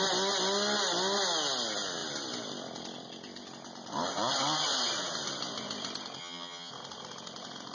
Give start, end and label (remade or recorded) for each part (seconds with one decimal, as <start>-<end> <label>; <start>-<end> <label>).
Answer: 0.0-6.2 recorded; 6.2-6.7 remade; 6.7-7.7 recorded